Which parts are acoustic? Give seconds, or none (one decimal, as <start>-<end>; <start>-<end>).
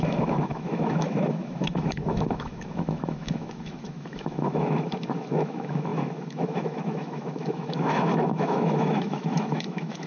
none